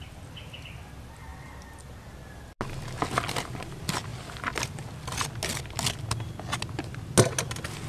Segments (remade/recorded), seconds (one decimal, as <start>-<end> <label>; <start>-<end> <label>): 0.0-7.9 recorded